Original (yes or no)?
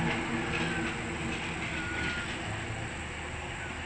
yes